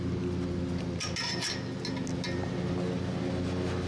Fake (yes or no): no